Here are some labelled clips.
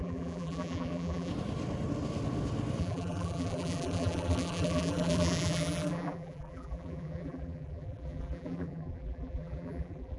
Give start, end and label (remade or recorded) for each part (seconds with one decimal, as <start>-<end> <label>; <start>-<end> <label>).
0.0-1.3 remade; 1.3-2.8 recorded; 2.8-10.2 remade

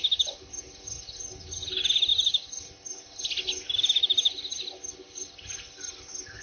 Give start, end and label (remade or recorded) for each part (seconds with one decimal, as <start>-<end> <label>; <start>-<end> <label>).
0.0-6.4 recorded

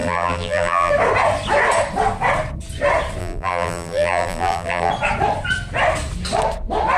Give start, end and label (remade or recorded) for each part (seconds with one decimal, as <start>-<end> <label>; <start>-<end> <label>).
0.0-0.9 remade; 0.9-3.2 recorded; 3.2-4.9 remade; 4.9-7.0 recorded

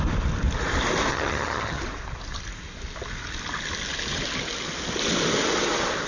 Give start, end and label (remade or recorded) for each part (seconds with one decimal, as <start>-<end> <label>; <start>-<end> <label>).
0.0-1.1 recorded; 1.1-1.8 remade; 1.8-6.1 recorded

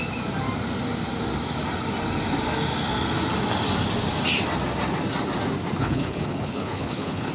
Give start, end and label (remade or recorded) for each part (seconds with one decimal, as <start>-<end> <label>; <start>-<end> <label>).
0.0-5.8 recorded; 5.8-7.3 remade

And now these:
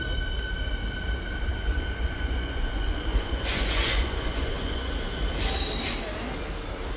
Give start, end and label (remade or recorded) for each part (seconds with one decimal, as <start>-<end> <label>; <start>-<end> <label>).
0.0-1.5 recorded; 1.5-4.9 remade; 4.9-7.0 recorded

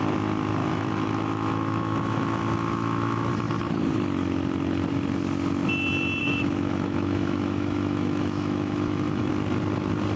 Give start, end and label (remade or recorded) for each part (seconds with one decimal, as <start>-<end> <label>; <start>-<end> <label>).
0.0-0.6 recorded; 0.6-3.3 remade; 3.3-6.2 recorded; 6.2-9.3 remade; 9.3-10.2 recorded

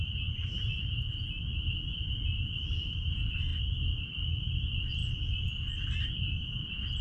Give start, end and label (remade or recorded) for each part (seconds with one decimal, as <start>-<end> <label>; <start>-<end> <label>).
0.0-7.0 recorded